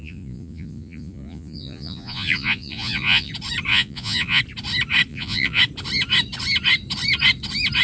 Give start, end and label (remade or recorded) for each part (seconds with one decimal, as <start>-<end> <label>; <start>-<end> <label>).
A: 0.0-3.3 remade; 3.3-3.7 recorded; 3.7-4.4 remade; 4.4-5.1 recorded; 5.1-5.6 remade; 5.6-7.8 recorded